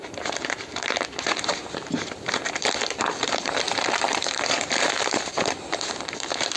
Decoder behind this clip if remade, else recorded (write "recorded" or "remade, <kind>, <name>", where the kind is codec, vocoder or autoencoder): remade, vocoder, BigVGAN v2